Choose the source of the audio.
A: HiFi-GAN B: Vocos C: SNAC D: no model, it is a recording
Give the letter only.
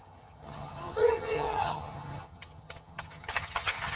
A